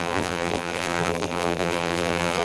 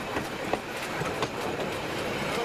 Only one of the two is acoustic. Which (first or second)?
second